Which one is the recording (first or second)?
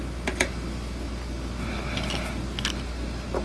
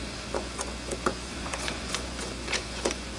first